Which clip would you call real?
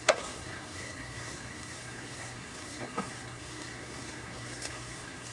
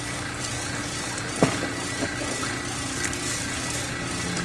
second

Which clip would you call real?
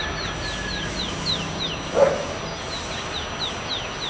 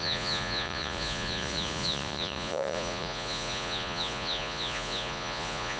first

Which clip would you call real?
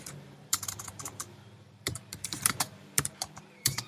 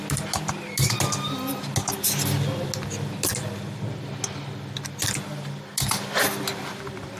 second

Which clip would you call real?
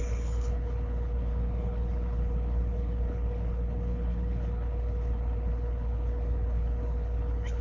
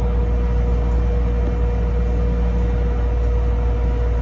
second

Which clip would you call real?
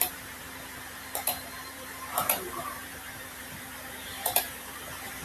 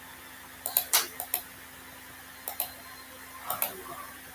second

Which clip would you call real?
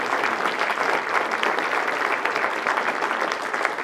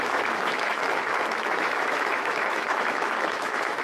first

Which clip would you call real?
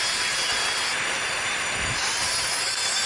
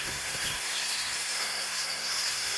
first